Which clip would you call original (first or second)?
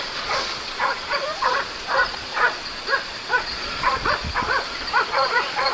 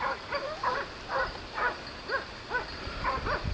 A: second